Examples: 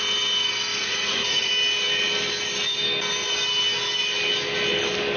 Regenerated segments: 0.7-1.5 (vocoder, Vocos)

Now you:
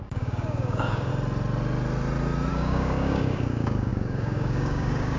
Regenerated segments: 0.0-1.1 (codec, DAC); 2.5-5.2

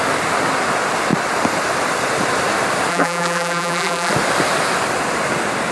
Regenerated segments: 2.9-4.1 (vocoder, BigVGAN v2)

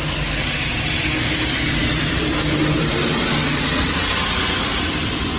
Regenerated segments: 1.8-2.6 (vocoder, BigVGAN v2); 3.4-4.1; 4.7-5.4

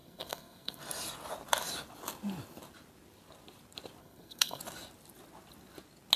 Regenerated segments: 0.0-0.8 (codec, SNAC); 4.0-4.6

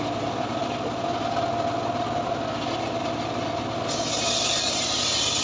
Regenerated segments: none